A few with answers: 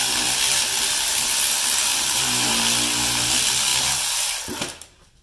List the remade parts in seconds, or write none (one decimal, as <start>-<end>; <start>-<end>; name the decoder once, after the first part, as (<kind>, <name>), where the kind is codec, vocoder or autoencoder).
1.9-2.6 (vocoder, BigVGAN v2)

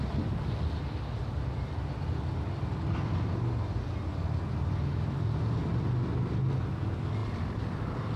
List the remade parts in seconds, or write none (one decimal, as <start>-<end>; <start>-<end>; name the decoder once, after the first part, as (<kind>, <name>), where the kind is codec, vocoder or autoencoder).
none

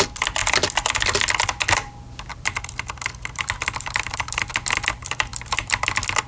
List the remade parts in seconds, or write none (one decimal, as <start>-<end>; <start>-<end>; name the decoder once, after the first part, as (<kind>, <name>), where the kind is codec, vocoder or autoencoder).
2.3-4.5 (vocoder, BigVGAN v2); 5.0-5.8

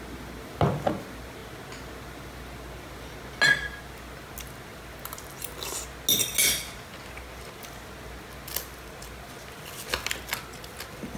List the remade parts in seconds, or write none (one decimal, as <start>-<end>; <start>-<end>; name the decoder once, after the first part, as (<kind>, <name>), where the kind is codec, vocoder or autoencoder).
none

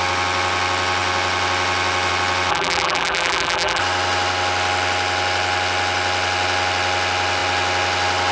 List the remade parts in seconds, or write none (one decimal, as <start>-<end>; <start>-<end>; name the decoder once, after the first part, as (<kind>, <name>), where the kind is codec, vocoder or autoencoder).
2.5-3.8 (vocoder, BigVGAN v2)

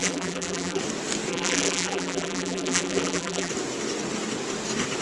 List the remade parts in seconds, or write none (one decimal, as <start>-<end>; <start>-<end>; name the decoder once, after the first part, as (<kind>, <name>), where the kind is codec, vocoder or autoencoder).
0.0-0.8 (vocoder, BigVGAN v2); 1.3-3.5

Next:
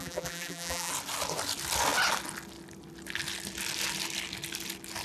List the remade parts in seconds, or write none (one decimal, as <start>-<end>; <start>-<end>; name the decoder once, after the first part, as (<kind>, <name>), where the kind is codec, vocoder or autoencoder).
0.0-0.9 (vocoder, BigVGAN v2)